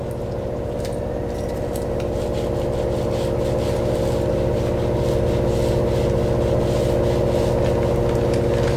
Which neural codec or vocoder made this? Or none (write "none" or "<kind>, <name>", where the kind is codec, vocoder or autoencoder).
none